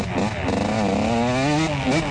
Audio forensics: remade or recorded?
recorded